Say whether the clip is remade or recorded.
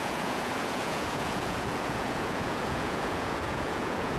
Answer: remade